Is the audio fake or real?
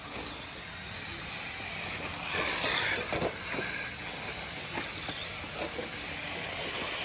real